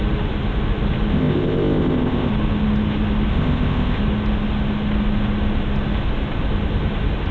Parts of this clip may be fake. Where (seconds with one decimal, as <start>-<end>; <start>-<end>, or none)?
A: 1.1-2.3; 3.3-4.0